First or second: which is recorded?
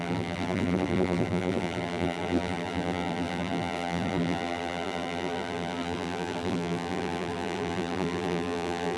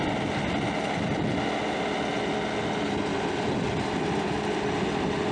second